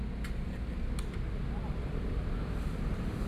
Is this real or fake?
real